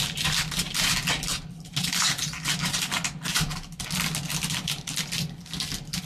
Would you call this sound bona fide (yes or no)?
yes